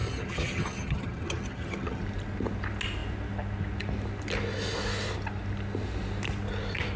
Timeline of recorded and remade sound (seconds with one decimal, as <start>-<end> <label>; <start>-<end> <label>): 0.0-2.0 remade; 2.0-7.0 recorded